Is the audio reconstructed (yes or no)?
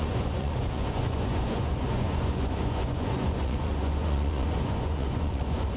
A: yes